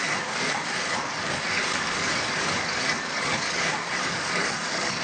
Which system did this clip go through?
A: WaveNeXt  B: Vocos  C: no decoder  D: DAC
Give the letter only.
D